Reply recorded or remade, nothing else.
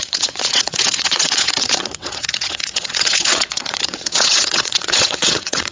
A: remade